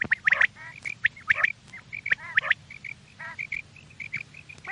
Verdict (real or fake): real